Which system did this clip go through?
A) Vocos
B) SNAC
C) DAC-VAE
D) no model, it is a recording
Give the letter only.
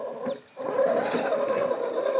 D